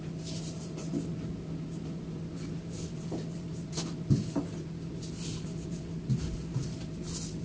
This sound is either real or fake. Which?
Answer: real